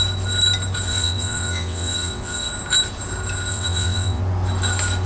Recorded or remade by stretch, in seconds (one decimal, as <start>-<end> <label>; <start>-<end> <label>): 0.0-0.9 recorded; 0.9-2.5 remade; 2.5-3.5 recorded; 3.5-4.2 remade; 4.2-5.1 recorded